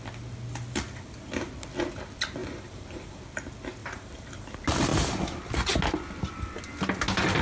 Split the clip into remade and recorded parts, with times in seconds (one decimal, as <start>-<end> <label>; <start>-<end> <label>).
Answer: 0.0-2.4 recorded; 2.4-3.2 remade; 3.2-3.8 recorded; 3.8-4.5 remade; 4.5-7.4 recorded

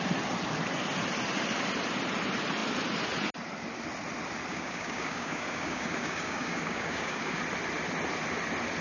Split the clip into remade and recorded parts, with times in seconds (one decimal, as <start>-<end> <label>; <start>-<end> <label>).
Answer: 0.0-4.5 recorded; 4.5-7.4 remade; 7.4-8.8 recorded

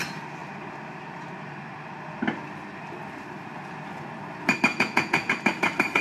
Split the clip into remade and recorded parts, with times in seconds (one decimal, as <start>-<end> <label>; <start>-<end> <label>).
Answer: 0.0-4.7 recorded; 4.7-5.3 remade; 5.3-6.0 recorded